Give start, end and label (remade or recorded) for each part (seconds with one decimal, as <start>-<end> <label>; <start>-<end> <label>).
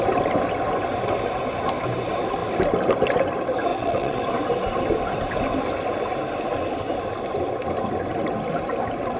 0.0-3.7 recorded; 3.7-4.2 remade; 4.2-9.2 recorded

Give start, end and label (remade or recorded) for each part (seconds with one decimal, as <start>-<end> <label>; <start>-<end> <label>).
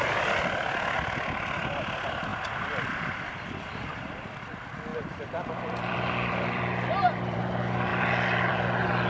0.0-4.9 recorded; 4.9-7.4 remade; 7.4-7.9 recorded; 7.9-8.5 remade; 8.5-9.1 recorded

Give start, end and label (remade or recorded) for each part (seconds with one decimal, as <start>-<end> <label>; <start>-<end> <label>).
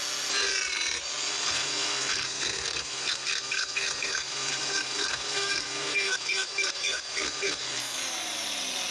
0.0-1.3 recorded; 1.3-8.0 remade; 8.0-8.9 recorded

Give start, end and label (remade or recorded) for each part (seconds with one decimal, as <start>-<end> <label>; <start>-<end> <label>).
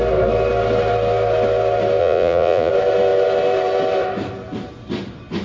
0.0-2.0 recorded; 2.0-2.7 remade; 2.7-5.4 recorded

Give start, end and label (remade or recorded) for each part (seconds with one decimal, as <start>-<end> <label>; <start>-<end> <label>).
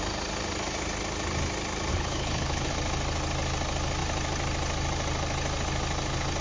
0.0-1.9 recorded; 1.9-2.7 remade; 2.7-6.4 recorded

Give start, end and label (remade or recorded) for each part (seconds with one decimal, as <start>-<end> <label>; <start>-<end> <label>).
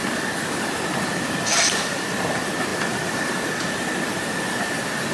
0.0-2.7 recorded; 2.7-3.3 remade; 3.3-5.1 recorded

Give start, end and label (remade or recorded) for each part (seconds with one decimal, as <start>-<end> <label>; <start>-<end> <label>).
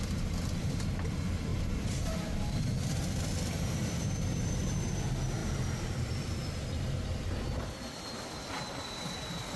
0.0-9.6 remade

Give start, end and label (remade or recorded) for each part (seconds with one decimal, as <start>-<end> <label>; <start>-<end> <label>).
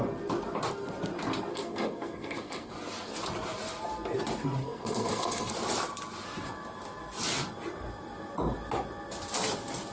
0.0-1.5 recorded; 1.5-2.7 remade; 2.7-4.6 recorded; 4.6-5.5 remade; 5.5-9.9 recorded